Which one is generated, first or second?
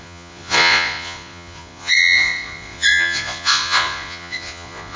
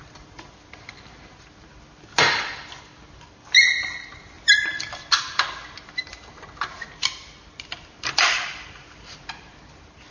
first